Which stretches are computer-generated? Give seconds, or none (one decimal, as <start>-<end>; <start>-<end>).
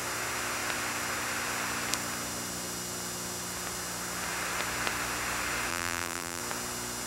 5.7-6.4